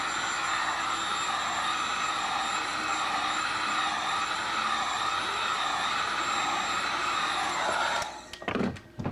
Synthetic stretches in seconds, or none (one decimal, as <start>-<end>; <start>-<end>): 2.7-5.1